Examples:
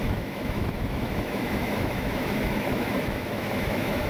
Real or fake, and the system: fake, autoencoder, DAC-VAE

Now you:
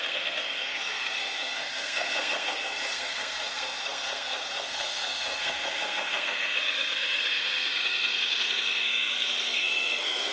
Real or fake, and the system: fake, codec, SNAC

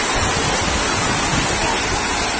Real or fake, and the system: real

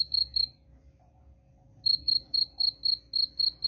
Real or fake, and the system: real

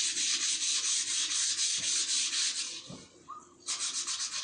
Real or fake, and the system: real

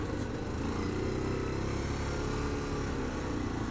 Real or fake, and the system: real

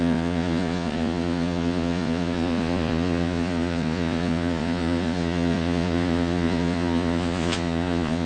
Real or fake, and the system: fake, vocoder, Vocos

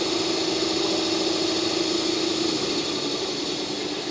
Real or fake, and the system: real